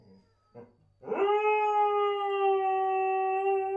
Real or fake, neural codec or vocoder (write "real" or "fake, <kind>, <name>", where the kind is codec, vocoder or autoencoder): real